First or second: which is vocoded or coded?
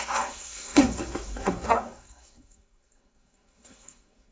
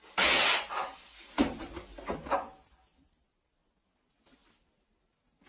first